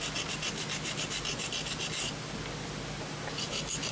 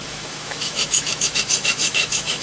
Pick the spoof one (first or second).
second